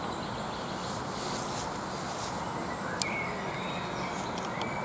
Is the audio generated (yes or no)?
no